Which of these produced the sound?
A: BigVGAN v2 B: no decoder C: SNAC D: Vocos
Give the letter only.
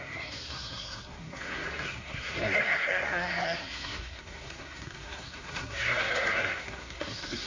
C